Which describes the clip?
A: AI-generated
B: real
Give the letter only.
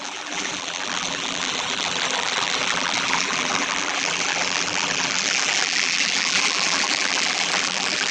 A